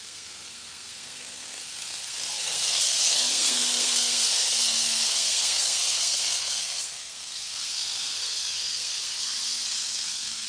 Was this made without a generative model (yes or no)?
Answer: no